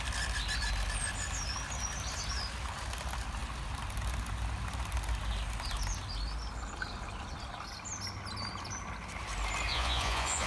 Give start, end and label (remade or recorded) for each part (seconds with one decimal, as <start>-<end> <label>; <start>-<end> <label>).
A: 0.0-9.7 recorded; 9.7-10.5 remade